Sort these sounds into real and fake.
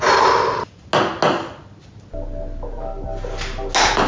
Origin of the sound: real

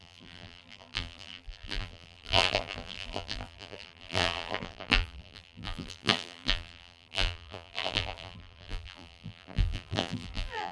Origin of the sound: fake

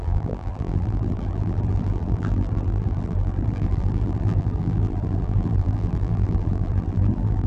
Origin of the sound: fake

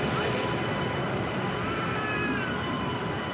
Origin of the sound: real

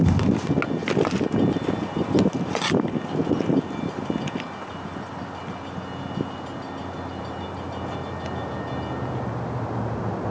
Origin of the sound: real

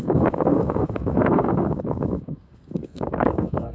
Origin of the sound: fake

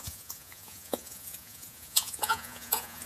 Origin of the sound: fake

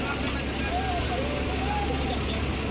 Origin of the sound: real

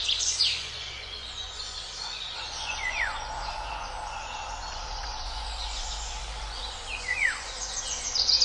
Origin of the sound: fake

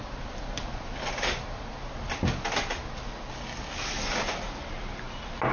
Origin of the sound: real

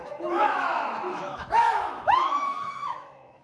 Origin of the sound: fake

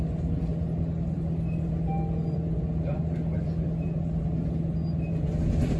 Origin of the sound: real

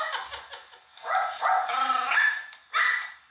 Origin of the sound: real